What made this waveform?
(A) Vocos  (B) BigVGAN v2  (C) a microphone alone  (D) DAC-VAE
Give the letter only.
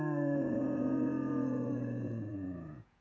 A